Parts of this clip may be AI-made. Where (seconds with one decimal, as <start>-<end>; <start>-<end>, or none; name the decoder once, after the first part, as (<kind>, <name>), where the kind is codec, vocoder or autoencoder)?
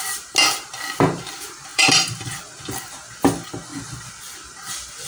1.7-2.4 (vocoder, BigVGAN v2); 3.7-4.2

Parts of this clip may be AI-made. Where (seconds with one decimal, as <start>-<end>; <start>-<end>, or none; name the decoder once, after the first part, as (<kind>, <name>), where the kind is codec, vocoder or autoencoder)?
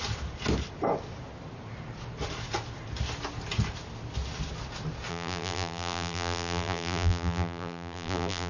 5.1-8.5 (vocoder, BigVGAN v2)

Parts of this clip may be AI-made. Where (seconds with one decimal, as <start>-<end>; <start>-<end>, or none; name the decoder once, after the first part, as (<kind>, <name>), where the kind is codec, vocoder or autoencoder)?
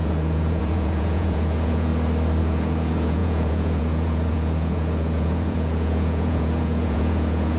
0.0-1.9 (vocoder, Vocos); 2.4-7.6